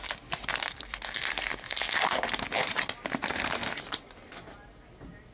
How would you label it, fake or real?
real